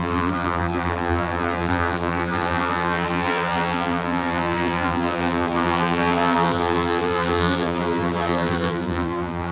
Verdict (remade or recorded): remade